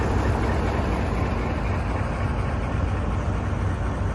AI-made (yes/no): no